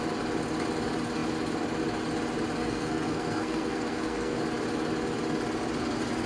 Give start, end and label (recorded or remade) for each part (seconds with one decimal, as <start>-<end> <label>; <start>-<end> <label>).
0.0-2.6 recorded; 2.6-4.4 remade; 4.4-6.3 recorded